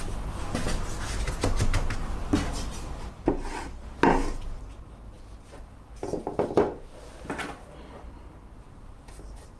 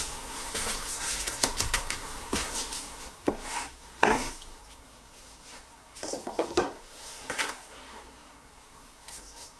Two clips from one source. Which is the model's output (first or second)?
second